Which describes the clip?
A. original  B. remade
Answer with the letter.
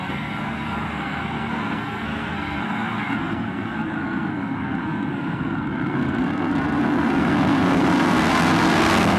B